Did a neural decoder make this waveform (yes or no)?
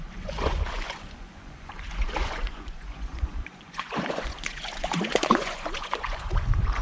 yes